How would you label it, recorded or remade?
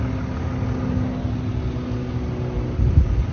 recorded